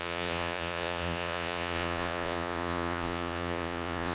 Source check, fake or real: fake